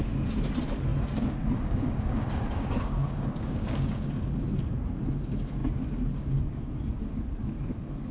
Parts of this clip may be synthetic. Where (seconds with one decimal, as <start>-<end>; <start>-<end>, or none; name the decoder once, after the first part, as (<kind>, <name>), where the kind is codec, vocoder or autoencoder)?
0.9-4.1 (codec, DAC)